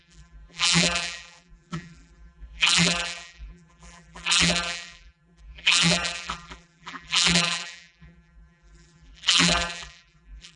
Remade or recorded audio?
remade